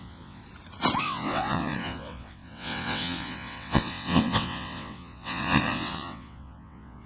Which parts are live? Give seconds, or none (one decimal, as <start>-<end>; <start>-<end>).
0.4-1.0